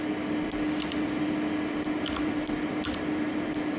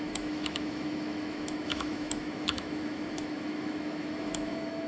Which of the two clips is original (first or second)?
first